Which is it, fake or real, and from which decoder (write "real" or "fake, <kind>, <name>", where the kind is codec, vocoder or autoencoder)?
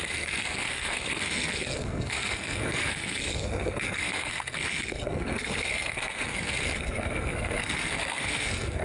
fake, codec, SNAC